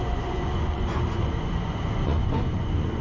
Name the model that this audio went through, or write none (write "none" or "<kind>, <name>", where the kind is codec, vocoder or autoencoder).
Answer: vocoder, Vocos